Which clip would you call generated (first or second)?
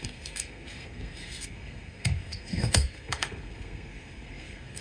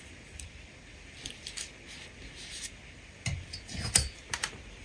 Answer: first